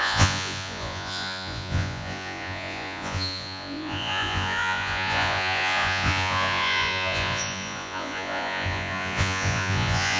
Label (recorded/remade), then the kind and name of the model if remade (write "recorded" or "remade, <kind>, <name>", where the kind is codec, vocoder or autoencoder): remade, vocoder, Vocos